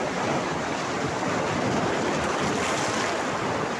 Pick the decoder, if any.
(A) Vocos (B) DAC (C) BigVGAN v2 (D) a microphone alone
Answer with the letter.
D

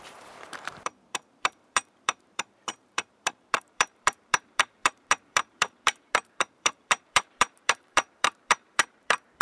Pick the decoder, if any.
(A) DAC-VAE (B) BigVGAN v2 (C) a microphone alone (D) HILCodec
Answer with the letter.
B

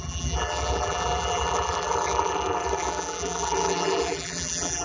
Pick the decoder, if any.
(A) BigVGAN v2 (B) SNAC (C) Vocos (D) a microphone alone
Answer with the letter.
A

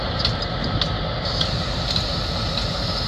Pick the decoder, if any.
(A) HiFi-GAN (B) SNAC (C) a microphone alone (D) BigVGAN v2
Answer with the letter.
D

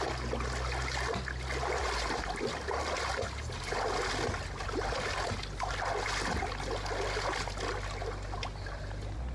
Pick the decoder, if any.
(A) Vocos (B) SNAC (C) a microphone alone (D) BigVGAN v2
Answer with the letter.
C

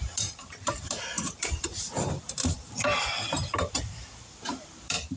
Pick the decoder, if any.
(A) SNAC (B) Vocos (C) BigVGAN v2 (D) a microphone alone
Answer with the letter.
C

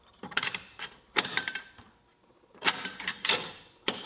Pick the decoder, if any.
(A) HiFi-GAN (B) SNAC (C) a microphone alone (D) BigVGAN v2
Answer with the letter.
D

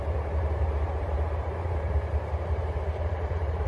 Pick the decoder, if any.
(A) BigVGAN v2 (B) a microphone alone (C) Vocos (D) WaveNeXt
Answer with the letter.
A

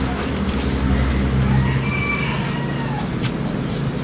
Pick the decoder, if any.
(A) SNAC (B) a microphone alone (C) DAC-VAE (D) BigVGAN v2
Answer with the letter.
B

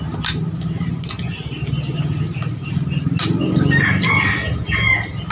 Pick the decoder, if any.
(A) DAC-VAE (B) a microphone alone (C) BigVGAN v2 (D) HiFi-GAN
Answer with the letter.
B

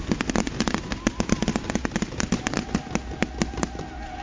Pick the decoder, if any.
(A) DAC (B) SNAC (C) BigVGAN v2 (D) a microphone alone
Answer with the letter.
D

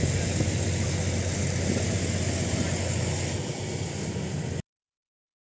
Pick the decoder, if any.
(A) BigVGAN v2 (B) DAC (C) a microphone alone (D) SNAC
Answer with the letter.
C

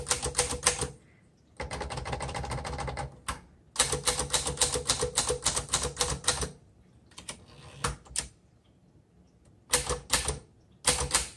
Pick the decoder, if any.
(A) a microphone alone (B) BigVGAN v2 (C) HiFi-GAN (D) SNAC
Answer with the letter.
A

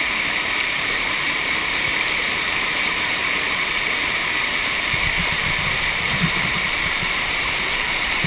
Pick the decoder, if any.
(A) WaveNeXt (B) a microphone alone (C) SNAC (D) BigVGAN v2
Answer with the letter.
D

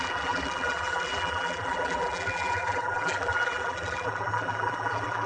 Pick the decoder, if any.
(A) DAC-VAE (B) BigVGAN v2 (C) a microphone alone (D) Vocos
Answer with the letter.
B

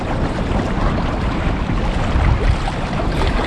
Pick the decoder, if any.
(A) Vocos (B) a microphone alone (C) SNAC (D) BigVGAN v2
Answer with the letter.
D